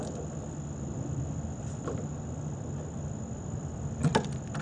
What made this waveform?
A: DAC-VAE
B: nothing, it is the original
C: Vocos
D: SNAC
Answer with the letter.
B